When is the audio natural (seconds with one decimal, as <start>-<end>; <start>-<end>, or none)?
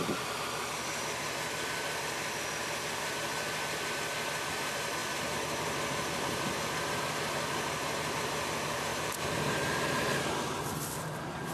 0.0-8.9; 10.2-11.5